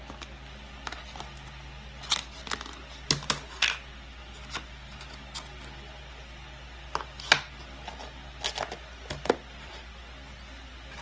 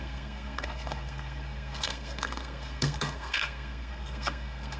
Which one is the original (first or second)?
first